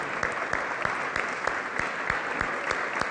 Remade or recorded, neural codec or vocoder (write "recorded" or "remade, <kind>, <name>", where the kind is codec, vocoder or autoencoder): recorded